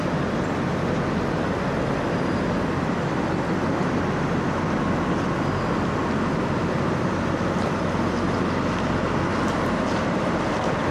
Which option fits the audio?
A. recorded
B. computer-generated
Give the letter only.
A